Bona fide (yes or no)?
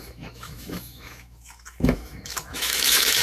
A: no